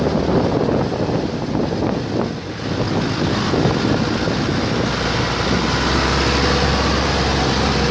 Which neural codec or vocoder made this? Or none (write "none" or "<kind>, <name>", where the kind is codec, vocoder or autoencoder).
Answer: none